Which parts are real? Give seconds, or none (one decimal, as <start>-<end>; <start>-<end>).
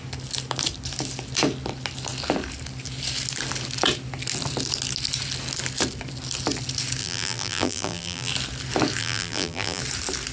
0.0-7.0; 8.3-9.0; 9.8-10.3